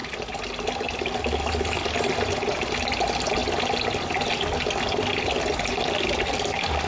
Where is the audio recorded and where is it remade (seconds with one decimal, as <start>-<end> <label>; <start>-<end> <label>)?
0.0-6.9 recorded